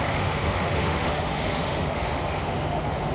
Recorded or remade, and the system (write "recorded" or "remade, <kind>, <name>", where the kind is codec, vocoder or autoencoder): remade, autoencoder, DAC-VAE